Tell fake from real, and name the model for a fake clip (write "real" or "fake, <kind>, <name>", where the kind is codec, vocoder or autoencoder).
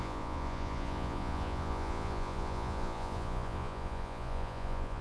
fake, vocoder, Vocos